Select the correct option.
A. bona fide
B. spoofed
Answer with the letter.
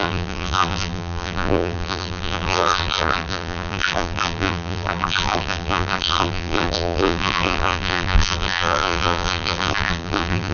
B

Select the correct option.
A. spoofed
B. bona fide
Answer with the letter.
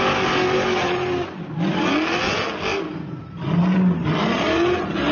B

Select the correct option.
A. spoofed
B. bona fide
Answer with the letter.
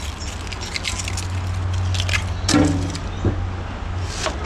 B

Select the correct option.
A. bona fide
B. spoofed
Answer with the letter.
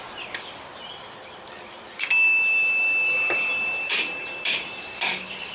B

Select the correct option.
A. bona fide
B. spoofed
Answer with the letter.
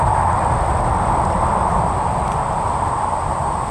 A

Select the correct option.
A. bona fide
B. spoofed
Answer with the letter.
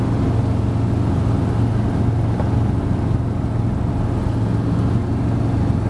A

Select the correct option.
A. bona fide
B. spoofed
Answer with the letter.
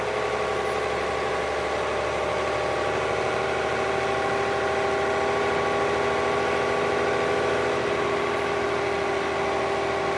A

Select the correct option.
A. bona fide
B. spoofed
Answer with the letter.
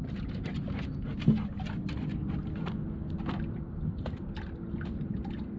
A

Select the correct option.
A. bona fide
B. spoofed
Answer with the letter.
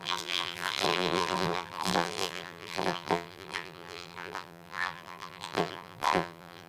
B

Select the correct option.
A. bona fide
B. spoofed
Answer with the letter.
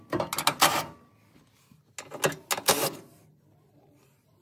A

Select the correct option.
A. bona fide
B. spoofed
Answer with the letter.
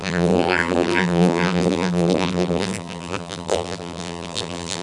B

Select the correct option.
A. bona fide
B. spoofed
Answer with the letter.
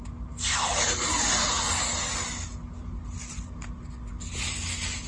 A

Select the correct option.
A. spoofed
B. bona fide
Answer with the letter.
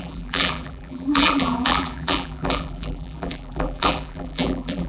A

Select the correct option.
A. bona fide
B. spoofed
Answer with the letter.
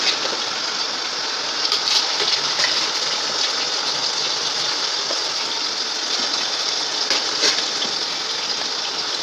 A